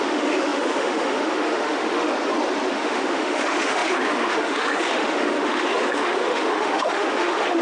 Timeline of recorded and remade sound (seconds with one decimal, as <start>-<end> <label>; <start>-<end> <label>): 0.0-2.1 remade; 2.1-2.7 recorded; 2.7-7.6 remade